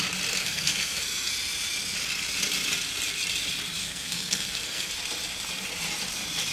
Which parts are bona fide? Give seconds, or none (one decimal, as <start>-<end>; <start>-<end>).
0.0-0.4; 1.3-3.8; 4.9-6.5